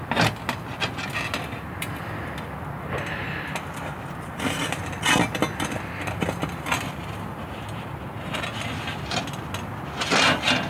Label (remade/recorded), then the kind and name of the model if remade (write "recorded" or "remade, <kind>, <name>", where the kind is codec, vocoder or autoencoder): recorded